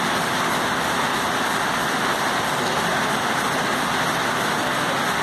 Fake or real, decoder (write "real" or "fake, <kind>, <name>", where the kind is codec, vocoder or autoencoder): real